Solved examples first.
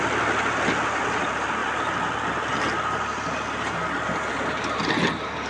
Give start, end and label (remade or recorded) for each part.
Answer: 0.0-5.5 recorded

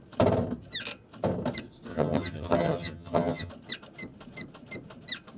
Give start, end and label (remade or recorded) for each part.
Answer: 0.0-1.9 recorded; 1.9-3.5 remade; 3.5-5.4 recorded

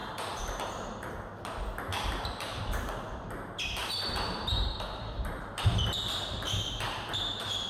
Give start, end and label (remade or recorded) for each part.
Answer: 0.0-1.1 remade; 1.1-1.9 recorded; 1.9-2.6 remade; 2.6-3.8 recorded; 3.8-7.1 remade; 7.1-7.7 recorded

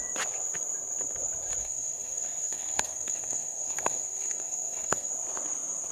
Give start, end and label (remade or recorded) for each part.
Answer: 0.0-1.6 recorded; 1.6-5.1 remade; 5.1-5.9 recorded

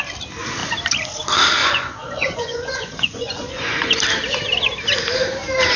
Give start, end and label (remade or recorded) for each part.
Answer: 0.0-1.6 recorded; 1.6-4.0 remade; 4.0-5.8 recorded

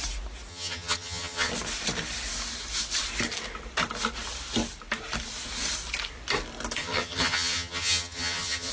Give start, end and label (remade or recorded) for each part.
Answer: 0.0-0.5 recorded; 0.5-1.5 remade; 1.5-6.8 recorded; 6.8-8.7 remade